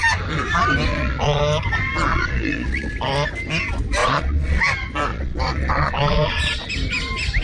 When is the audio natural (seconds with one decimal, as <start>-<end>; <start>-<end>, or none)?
0.0-0.9; 1.4-2.1; 2.9-4.0; 4.6-5.1; 6.7-7.4